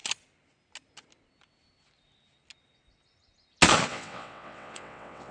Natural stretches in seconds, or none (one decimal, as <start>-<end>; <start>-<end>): 0.0-3.9